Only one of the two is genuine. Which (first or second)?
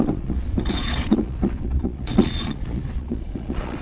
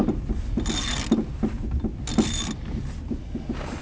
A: second